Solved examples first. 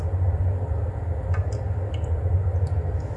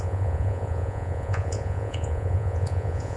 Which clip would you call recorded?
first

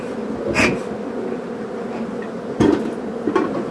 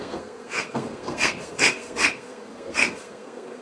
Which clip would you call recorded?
first